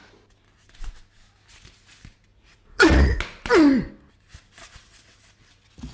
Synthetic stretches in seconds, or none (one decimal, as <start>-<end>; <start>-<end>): 2.3-3.2